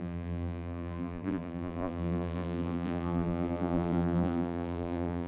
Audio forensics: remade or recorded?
remade